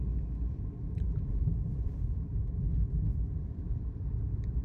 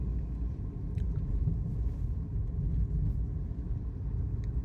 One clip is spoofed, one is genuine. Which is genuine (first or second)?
second